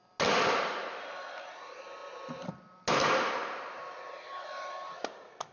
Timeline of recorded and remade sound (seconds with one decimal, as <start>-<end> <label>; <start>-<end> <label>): 0.0-5.5 recorded

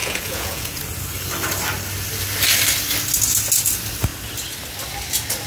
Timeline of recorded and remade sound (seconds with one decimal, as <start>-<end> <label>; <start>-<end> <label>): 0.0-0.8 remade; 0.8-5.5 recorded

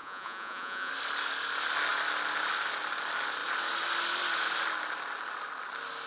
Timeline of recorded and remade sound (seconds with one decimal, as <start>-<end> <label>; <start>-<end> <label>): 0.0-0.9 remade; 0.9-6.1 recorded

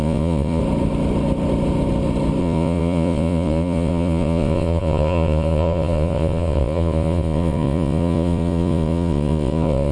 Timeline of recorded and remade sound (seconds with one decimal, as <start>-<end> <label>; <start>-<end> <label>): 0.0-0.6 remade; 0.6-2.4 recorded; 2.4-9.9 remade

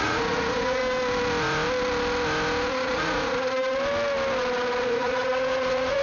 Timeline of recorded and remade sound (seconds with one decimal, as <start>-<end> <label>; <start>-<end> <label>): 0.0-0.8 remade; 0.8-2.7 recorded; 2.7-3.6 remade; 3.6-4.8 recorded; 4.8-6.0 remade

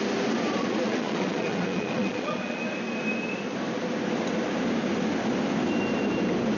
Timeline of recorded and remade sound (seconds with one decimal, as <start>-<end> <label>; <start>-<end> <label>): 0.0-0.6 recorded; 0.6-2.6 remade; 2.6-6.6 recorded

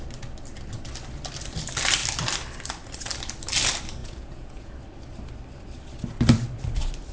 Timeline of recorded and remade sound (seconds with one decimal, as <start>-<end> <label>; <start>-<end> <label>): 0.0-4.0 recorded; 4.0-4.7 remade; 4.7-7.1 recorded

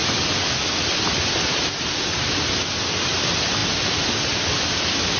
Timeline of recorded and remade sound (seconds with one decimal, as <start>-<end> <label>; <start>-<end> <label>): 0.0-5.2 recorded